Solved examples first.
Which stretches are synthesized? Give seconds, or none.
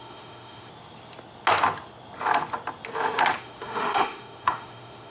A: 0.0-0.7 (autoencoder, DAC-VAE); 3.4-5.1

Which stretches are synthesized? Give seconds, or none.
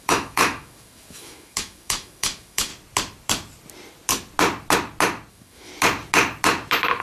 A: 0.0-2.7 (autoencoder, DAC-VAE); 5.3-5.7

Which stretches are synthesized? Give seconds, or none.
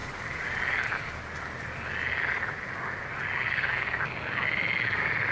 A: none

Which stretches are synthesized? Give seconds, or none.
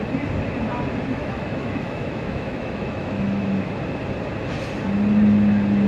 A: 1.1-3.7 (autoencoder, DAC-VAE)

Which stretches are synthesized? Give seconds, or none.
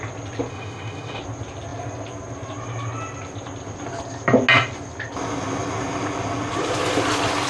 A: 0.5-1.2 (autoencoder, DAC-VAE)